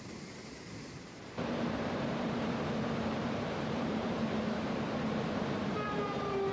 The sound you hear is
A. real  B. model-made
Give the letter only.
B